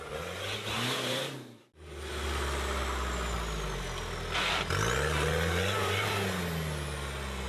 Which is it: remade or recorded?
recorded